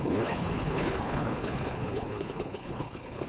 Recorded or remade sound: remade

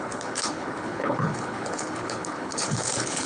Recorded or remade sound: remade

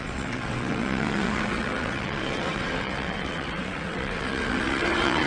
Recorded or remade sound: remade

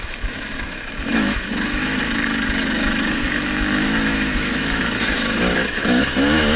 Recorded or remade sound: remade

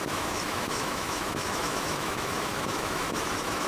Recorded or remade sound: remade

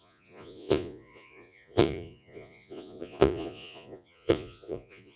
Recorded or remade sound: remade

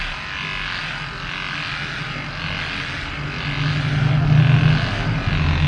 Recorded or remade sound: recorded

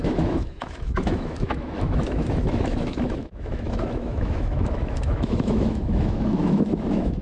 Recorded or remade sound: remade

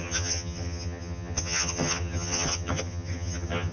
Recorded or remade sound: remade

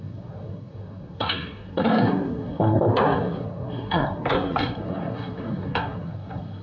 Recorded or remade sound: remade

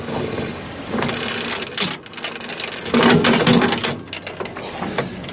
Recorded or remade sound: recorded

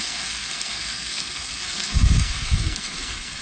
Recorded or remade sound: remade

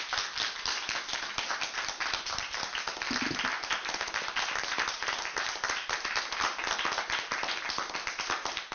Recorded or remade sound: recorded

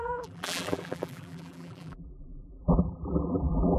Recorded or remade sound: remade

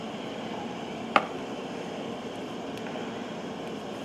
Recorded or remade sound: remade